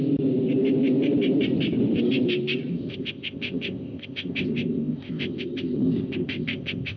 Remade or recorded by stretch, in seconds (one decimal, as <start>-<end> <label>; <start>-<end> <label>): 0.0-2.7 recorded; 2.7-7.0 remade